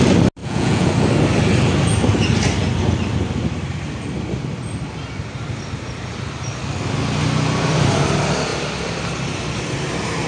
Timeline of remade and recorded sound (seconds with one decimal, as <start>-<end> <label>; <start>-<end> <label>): 0.0-0.4 recorded; 0.4-0.9 remade; 0.9-10.3 recorded